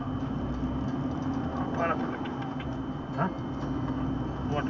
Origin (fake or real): real